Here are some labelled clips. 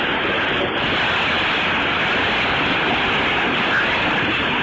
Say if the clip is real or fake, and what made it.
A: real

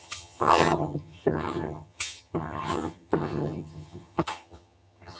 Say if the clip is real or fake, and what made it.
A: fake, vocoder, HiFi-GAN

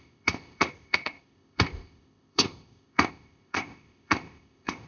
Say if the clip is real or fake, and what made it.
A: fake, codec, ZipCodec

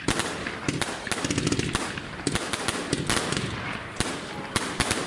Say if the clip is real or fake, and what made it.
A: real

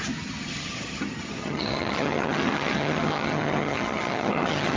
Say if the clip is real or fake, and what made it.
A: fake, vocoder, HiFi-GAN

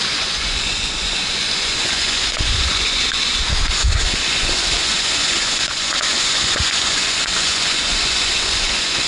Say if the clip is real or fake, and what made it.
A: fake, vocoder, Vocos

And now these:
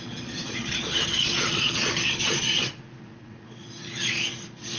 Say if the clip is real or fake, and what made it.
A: fake, vocoder, Vocos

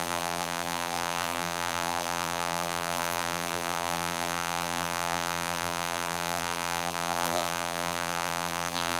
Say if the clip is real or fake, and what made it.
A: fake, vocoder, BigVGAN v2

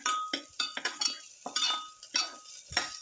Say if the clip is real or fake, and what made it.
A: real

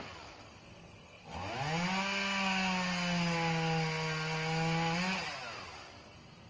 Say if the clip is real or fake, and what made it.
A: real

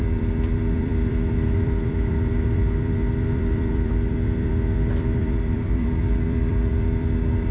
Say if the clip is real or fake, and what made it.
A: fake, vocoder, BigVGAN v2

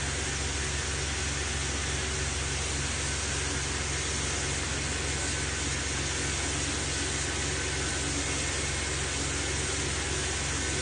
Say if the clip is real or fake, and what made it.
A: real